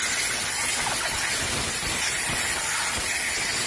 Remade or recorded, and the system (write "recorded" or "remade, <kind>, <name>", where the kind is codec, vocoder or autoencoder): recorded